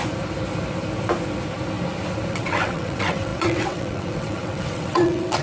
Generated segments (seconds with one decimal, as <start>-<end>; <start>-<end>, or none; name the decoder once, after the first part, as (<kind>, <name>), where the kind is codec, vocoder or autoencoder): 2.3-5.4 (vocoder, WaveNeXt)